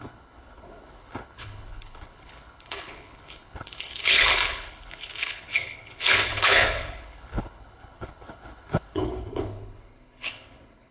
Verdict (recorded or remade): remade